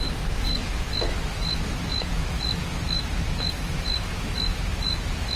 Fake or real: fake